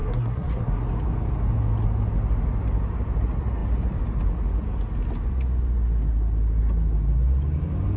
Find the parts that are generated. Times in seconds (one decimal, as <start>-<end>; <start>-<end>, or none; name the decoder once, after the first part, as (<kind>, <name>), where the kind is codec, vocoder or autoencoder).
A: 0.0-0.8 (codec, SNAC)